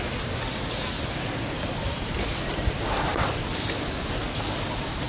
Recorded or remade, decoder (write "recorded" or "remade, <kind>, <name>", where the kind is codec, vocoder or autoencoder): recorded